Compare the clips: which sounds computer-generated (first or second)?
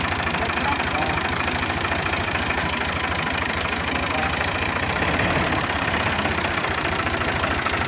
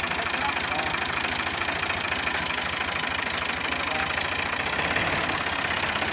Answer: first